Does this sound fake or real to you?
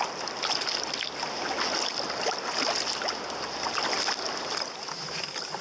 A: real